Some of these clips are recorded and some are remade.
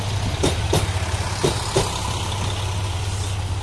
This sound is recorded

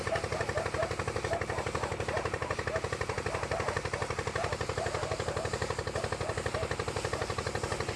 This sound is recorded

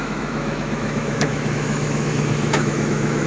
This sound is remade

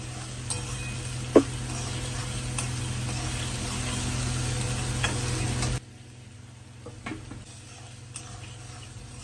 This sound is recorded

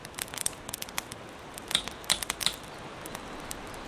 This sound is recorded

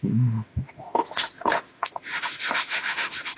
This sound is remade